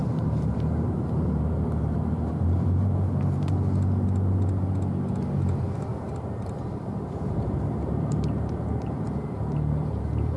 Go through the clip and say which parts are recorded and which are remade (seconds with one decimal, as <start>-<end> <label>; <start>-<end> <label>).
0.0-3.5 remade; 3.5-5.9 recorded; 5.9-10.4 remade